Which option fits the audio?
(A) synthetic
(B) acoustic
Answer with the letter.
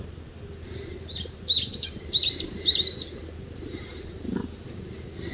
B